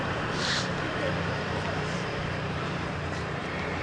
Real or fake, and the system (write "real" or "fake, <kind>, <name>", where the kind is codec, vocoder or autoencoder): fake, vocoder, BigVGAN v2